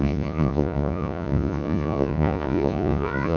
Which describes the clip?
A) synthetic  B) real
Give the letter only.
A